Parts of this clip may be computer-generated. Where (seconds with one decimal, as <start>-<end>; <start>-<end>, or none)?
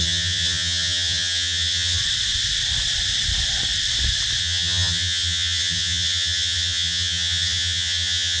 0.0-2.0; 4.4-8.4